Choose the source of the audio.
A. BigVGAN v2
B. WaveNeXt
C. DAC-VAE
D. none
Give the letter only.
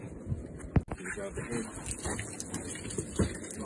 D